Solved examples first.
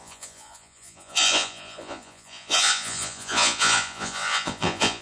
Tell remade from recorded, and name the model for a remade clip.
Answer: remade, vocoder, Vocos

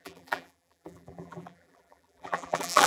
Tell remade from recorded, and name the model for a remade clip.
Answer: remade, vocoder, BigVGAN v2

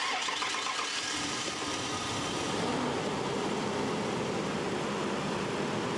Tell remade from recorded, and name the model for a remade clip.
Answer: recorded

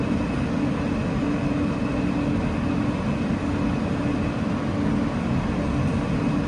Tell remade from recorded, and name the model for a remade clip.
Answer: recorded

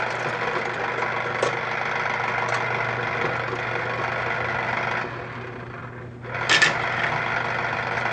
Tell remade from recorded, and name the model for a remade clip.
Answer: recorded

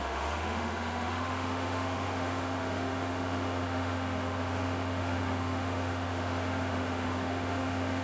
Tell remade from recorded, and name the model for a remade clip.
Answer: remade, autoencoder, DAC-VAE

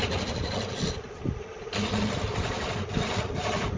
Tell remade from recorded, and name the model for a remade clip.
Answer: recorded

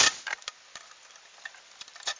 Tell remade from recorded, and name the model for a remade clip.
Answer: recorded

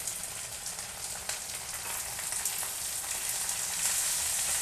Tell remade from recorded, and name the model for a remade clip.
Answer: recorded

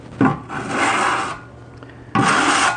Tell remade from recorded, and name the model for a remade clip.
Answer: recorded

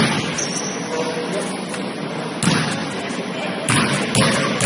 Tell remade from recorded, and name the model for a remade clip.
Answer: recorded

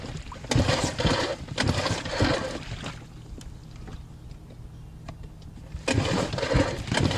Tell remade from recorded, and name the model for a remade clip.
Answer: recorded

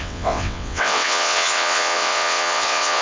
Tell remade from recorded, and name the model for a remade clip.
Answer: remade, vocoder, WaveNeXt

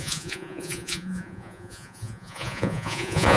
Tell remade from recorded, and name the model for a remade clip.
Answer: remade, vocoder, Vocos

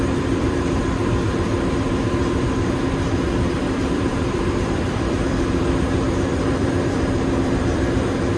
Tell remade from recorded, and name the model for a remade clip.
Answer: remade, vocoder, BigVGAN v2